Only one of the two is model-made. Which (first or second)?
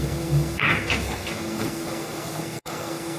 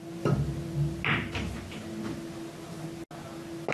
first